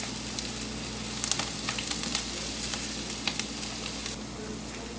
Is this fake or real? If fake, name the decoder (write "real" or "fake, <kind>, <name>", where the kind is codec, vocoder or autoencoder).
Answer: real